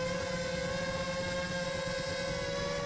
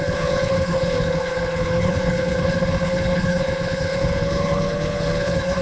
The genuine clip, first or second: first